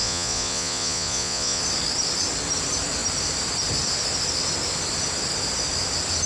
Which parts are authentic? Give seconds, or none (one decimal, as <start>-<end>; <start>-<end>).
1.6-6.3